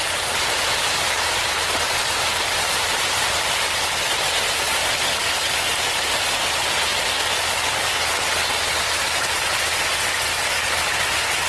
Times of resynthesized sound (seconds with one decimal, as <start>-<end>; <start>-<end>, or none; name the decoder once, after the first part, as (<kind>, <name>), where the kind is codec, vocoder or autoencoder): 0.0-6.9 (vocoder, BigVGAN v2)

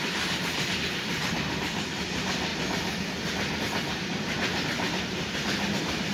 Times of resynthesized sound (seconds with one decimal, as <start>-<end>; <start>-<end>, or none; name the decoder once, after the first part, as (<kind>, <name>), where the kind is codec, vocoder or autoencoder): 0.0-2.5 (vocoder, BigVGAN v2); 3.6-4.1; 4.9-6.1

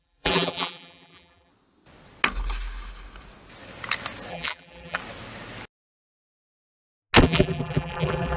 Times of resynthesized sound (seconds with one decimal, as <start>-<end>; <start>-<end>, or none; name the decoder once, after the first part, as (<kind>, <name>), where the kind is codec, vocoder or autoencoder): 0.0-1.5 (vocoder, BigVGAN v2); 4.3-5.0; 7.2-8.4

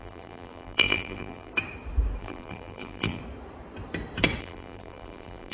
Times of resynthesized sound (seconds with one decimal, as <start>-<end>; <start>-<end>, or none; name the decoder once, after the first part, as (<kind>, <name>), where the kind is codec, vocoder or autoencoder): 0.0-1.5 (vocoder, BigVGAN v2); 2.2-3.2; 4.4-5.5

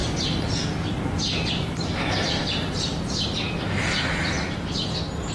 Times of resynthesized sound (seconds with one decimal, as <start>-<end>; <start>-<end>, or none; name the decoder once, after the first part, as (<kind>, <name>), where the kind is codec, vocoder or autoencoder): none

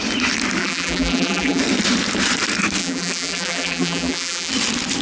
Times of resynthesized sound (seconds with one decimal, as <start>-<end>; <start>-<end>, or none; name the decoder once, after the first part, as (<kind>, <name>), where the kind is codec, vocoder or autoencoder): 0.6-1.6 (vocoder, BigVGAN v2); 2.8-4.5

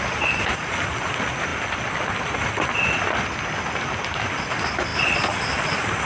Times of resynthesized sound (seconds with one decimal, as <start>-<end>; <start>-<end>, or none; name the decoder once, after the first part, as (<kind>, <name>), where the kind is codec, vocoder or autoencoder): 1.5-2.0 (vocoder, BigVGAN v2); 4.9-6.1

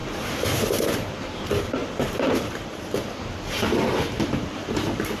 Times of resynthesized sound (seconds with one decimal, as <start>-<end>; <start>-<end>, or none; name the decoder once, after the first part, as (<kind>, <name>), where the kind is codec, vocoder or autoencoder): 0.6-5.2 (vocoder, BigVGAN v2)